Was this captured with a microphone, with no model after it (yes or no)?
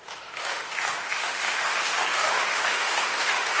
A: no